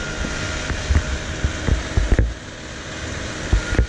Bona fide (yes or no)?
yes